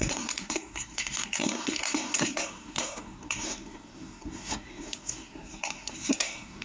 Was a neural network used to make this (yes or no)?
yes